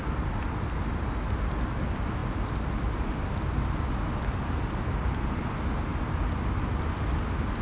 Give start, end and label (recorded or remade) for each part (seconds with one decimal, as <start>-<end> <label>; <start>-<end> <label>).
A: 0.0-7.6 recorded